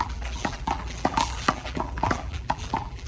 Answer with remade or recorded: remade